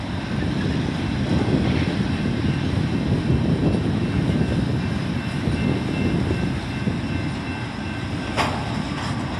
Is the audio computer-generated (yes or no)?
no